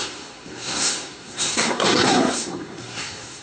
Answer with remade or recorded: remade